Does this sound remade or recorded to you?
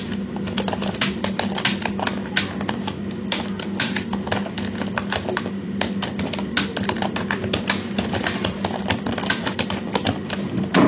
recorded